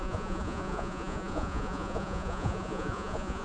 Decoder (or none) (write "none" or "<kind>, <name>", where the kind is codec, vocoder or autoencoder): vocoder, Vocos